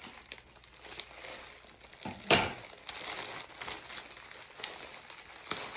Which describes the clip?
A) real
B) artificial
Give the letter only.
A